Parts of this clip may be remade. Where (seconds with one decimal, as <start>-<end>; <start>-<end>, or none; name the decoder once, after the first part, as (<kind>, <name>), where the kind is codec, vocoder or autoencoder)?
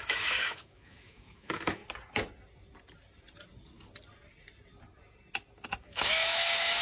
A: 0.0-1.8 (autoencoder, DAC-VAE); 5.8-6.8